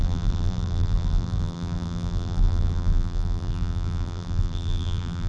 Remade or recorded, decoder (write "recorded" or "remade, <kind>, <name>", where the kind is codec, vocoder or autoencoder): remade, vocoder, BigVGAN v2